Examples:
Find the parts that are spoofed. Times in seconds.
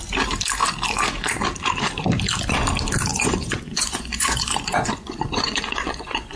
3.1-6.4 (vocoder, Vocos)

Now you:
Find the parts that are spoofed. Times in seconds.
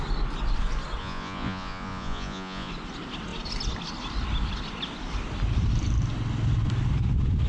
1.0-2.7 (vocoder, Vocos)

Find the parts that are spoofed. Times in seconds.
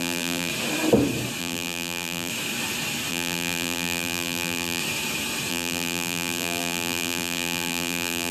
0.0-0.5 (vocoder, BigVGAN v2); 1.4-2.3; 3.1-4.8; 5.5-8.3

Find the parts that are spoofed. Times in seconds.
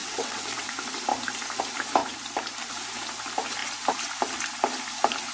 0.0-0.7 (vocoder, WaveNeXt)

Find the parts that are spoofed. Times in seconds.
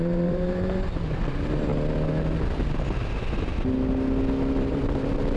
0.0-1.7 (vocoder, BigVGAN v2); 4.6-5.4